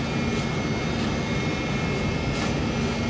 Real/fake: real